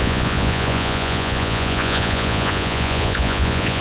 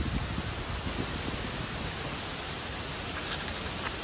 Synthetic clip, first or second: first